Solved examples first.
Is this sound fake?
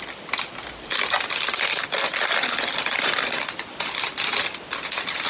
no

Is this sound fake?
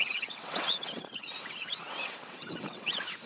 yes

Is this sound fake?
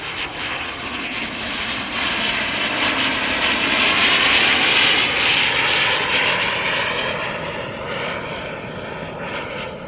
no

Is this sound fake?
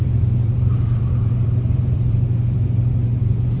yes